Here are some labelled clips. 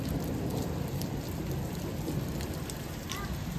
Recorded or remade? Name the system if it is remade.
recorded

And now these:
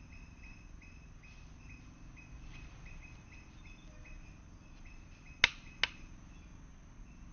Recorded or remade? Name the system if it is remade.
recorded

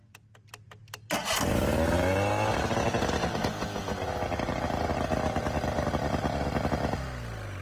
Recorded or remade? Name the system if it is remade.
recorded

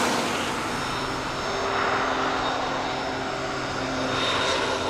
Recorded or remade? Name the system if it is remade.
recorded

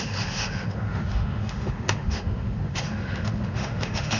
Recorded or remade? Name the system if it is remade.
remade, autoencoder, DAC-VAE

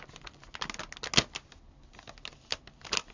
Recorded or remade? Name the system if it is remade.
recorded